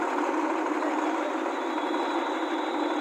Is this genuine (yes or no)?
yes